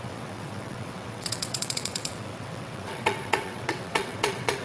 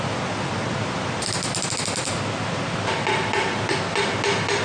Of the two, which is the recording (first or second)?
second